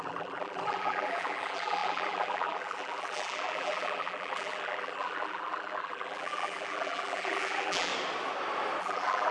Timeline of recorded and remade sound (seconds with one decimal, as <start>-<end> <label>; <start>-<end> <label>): 0.0-7.9 remade; 7.9-8.8 recorded; 8.8-9.3 remade